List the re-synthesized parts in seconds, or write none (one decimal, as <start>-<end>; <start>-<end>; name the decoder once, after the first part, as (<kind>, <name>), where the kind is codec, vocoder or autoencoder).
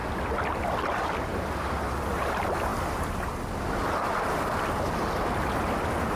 none